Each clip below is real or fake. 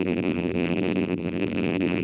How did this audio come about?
fake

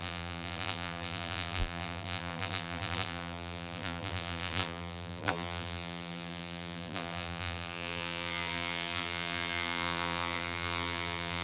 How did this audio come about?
fake